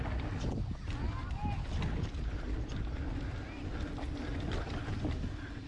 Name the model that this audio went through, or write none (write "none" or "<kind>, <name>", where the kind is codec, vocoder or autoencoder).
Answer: none